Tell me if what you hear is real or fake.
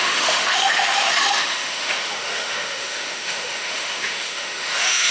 fake